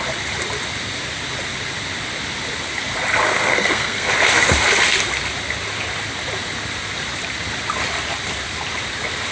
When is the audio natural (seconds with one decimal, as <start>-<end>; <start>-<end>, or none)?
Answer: 0.0-3.2; 4.1-9.3